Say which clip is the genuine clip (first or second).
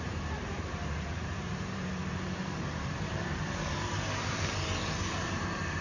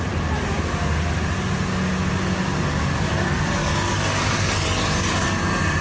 second